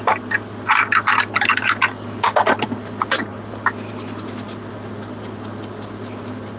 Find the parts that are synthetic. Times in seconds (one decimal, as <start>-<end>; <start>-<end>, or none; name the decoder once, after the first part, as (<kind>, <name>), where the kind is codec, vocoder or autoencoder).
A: none